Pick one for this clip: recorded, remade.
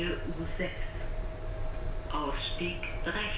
recorded